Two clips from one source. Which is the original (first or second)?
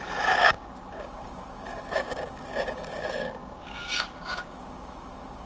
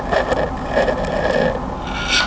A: second